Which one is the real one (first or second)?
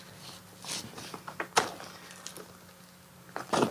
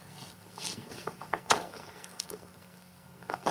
first